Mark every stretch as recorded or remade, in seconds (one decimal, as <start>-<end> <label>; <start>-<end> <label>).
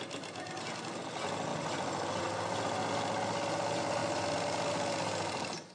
0.0-5.7 recorded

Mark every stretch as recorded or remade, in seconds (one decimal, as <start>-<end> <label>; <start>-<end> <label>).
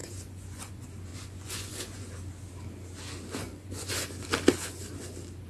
0.0-0.7 remade; 0.7-1.1 recorded; 1.1-2.1 remade; 2.1-3.4 recorded; 3.4-3.9 remade; 3.9-5.5 recorded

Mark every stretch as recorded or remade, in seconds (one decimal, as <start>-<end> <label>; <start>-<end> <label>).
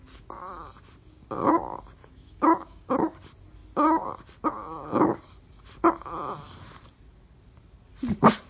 0.0-2.0 recorded; 2.0-2.9 remade; 2.9-8.5 recorded